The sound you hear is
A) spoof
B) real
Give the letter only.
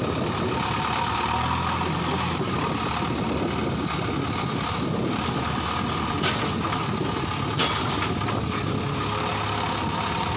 B